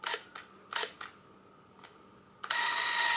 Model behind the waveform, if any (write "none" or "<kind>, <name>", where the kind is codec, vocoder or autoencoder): none